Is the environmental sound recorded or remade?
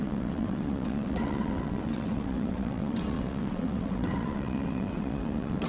remade